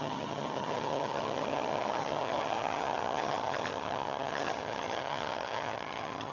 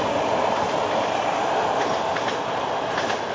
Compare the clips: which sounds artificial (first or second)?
first